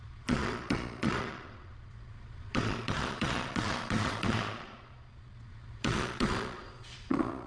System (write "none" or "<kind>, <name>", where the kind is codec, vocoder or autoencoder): vocoder, Vocos